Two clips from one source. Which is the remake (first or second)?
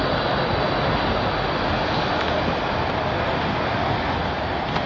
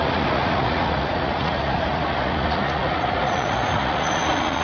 second